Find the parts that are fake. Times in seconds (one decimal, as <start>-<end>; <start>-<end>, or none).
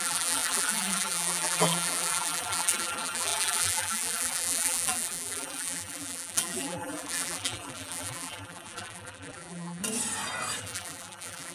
0.0-9.8; 10.6-11.5